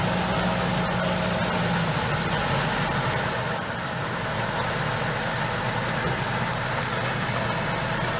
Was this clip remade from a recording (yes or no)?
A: no